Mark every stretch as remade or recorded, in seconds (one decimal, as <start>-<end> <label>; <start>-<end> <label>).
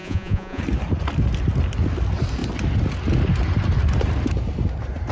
0.0-0.6 remade; 0.6-5.1 recorded